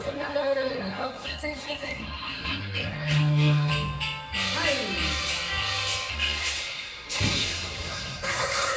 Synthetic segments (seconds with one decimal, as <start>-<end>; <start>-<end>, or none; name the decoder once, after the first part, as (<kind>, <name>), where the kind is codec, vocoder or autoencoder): 0.0-3.7 (codec, SNAC); 6.1-8.8